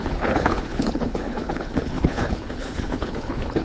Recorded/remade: remade